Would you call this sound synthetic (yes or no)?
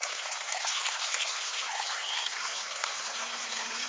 yes